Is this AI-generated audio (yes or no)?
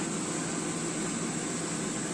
no